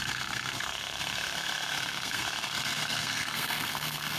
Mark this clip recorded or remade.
remade